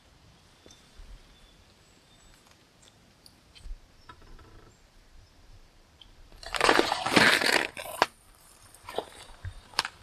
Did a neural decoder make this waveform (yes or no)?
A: yes